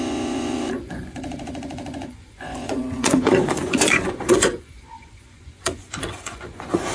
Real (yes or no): no